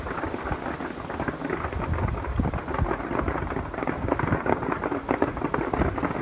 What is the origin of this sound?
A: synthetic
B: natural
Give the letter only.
B